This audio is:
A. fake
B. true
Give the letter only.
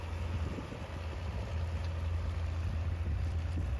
B